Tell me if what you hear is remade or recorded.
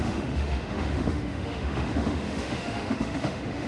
remade